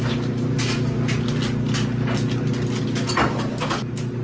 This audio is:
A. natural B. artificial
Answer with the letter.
A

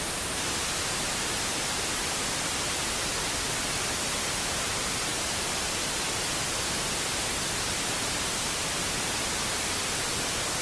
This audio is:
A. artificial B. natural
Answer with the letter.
B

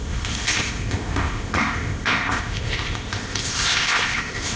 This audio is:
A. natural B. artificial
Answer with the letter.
B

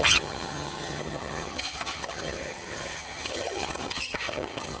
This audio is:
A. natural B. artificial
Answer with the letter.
B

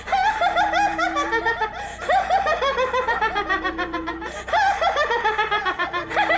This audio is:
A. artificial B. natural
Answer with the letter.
A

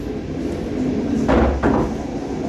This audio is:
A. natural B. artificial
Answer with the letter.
A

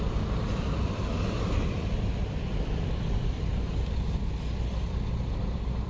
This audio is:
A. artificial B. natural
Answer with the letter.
B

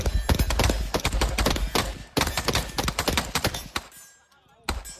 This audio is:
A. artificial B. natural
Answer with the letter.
A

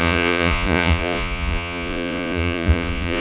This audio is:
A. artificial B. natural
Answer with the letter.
A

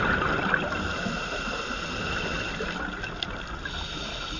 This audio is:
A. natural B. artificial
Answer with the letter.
A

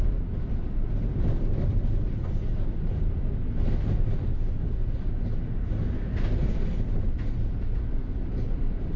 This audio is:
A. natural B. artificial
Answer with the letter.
A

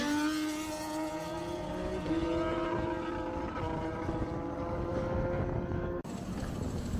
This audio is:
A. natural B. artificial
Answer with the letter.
A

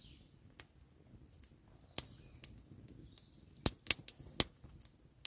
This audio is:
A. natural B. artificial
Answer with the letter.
A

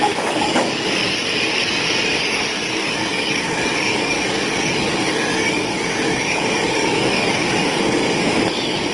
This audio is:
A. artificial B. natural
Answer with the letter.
A